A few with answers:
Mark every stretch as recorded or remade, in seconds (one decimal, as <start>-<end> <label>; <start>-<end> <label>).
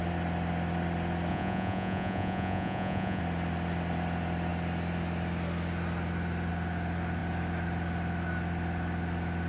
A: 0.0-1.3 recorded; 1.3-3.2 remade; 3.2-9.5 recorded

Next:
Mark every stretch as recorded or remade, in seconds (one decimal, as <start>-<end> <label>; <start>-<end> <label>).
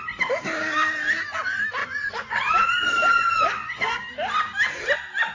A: 0.0-1.8 recorded; 1.8-4.0 remade; 4.0-5.3 recorded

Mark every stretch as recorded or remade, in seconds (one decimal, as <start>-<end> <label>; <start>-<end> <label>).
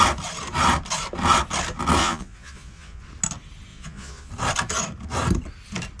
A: 0.0-2.0 recorded; 2.0-3.0 remade; 3.0-3.7 recorded; 3.7-4.3 remade; 4.3-6.0 recorded